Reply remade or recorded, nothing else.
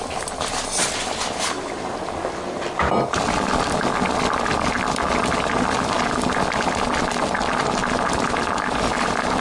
recorded